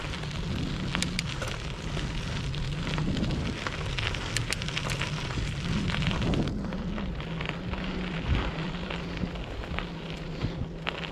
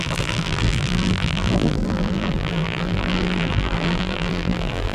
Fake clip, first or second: second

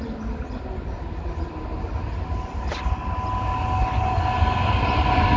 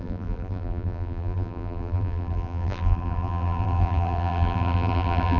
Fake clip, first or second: second